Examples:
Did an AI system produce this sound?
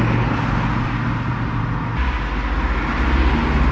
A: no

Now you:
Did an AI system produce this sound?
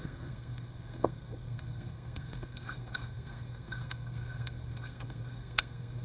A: yes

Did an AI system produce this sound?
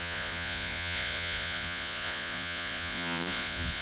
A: yes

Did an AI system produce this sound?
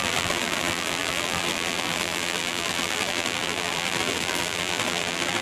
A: yes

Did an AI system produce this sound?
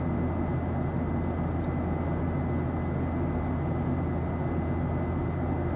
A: no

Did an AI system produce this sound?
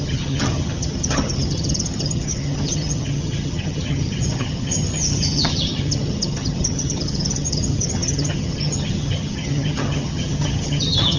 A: yes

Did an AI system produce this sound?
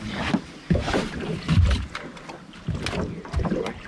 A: no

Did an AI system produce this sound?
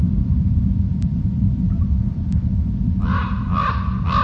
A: no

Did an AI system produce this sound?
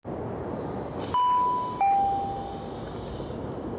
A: no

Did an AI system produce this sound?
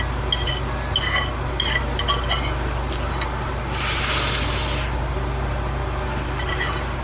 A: no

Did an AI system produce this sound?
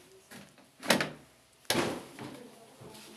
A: no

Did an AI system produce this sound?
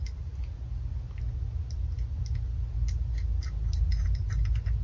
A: no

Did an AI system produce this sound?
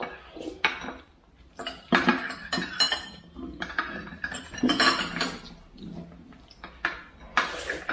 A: no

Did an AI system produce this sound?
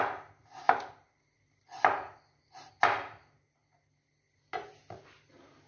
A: no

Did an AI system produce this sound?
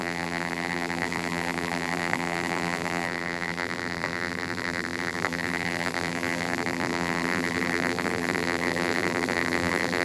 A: yes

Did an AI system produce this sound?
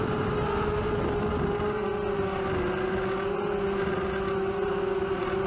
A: no